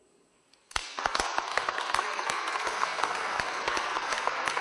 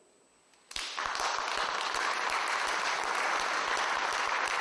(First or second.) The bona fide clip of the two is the second